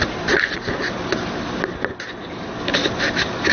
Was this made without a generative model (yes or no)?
yes